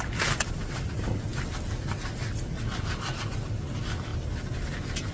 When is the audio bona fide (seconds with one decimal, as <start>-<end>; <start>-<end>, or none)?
0.0-5.1